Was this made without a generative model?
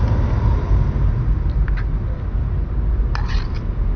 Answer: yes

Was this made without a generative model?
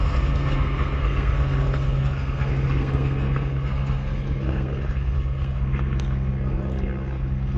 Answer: no